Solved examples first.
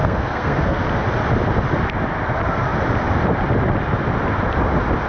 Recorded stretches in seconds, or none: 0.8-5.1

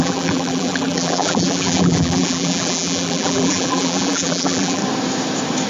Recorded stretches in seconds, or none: 4.8-5.7

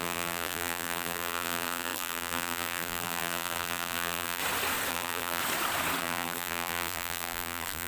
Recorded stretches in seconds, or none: 4.4-4.9; 5.4-6.0

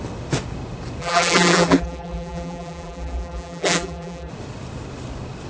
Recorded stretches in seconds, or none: 0.0-1.0; 4.3-5.5

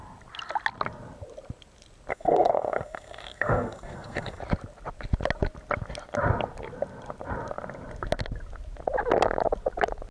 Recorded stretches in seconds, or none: 0.0-2.1; 4.4-10.1

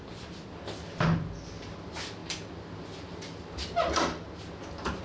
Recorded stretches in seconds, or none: 0.0-5.0

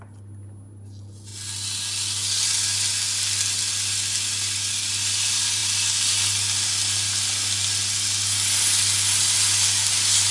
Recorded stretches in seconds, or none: 0.0-10.3

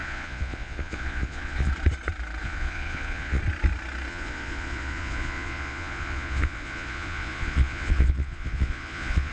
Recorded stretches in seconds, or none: 1.7-2.4; 3.4-4.1